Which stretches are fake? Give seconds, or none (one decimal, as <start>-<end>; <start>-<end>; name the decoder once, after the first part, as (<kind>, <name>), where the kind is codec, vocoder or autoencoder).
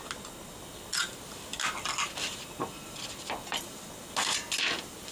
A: 0.6-5.1 (vocoder, BigVGAN v2)